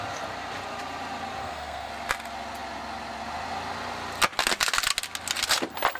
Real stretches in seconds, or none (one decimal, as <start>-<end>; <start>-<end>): 0.0-1.4; 1.9-6.0